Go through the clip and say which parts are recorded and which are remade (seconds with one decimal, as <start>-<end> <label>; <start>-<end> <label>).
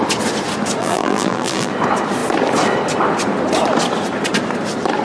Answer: 0.0-0.8 recorded; 0.8-1.7 remade; 1.7-5.0 recorded